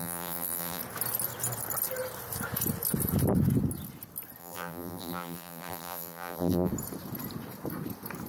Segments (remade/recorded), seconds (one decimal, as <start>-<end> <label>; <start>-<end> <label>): 0.0-0.8 remade; 0.8-4.4 recorded; 4.4-6.7 remade; 6.7-8.3 recorded